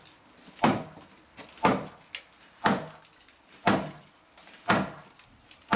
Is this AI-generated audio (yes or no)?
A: no